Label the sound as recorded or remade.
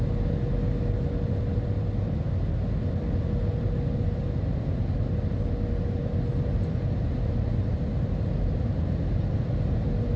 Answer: recorded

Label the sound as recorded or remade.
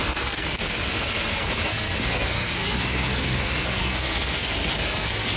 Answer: remade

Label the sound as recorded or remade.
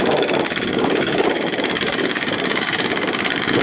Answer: remade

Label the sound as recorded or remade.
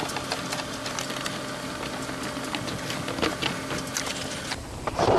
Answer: recorded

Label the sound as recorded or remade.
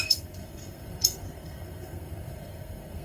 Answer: remade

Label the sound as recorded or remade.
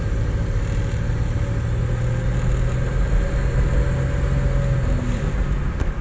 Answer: recorded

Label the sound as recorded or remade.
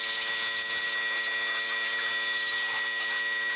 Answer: recorded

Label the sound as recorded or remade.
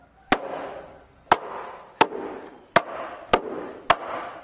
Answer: recorded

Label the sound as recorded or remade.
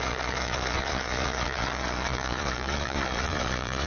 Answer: remade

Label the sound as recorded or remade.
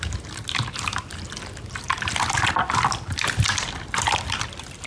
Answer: recorded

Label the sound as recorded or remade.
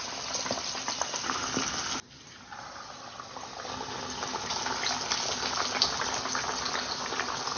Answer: recorded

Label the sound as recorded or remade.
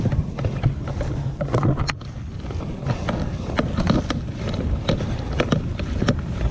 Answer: recorded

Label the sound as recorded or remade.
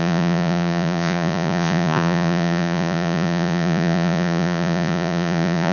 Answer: remade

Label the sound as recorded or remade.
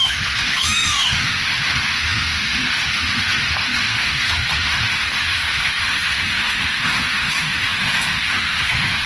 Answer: remade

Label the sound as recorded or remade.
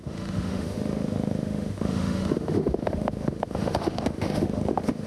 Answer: remade